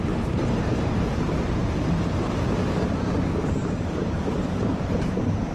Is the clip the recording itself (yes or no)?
no